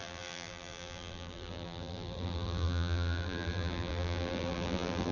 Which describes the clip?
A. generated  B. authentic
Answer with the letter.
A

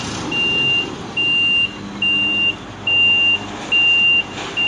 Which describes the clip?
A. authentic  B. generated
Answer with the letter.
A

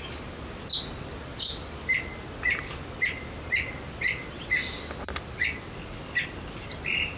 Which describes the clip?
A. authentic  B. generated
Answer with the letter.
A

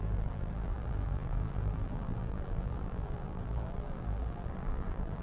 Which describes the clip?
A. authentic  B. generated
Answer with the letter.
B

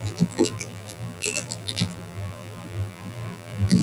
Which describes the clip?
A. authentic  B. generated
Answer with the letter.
B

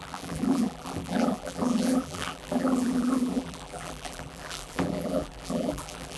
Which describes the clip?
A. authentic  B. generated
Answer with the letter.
B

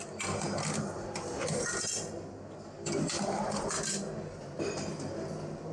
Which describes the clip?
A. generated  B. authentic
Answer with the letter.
B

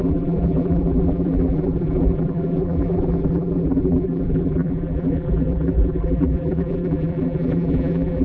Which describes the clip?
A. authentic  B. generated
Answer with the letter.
B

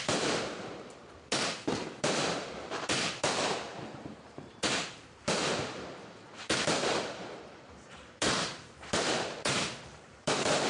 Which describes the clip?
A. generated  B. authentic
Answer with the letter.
A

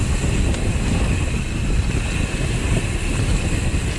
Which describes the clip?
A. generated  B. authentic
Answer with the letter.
B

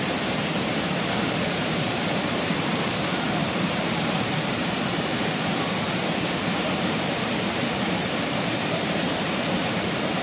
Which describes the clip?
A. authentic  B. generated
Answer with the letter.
B